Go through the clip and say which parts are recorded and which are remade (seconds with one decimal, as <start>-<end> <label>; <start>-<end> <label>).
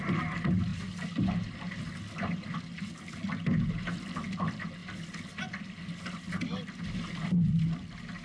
0.0-4.8 recorded; 4.8-5.4 remade; 5.4-8.2 recorded